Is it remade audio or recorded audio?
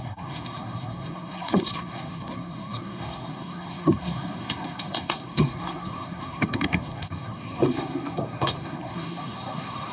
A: remade